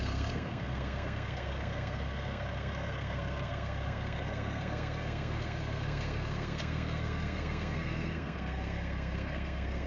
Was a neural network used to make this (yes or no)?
yes